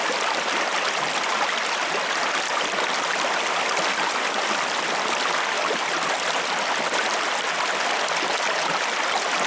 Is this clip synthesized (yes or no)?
no